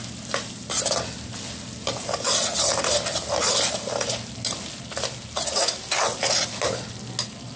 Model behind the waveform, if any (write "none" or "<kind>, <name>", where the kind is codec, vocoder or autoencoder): none